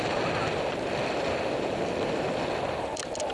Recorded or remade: recorded